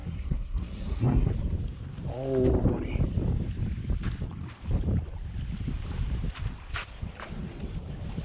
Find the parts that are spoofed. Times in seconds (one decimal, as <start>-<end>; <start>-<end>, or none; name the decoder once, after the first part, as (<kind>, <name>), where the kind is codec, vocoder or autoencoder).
0.0-1.3 (codec, SNAC)